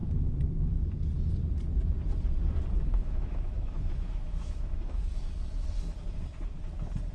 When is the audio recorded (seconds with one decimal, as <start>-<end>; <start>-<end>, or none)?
0.0-2.9; 5.0-7.1